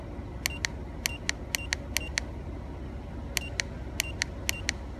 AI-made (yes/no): no